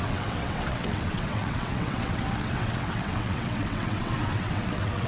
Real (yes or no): no